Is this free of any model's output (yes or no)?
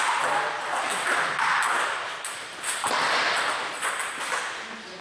yes